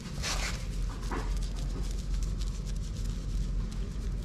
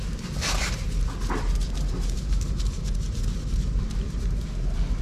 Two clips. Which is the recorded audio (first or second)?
first